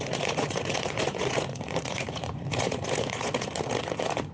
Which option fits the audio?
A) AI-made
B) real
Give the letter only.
A